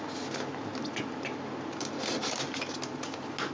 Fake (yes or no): no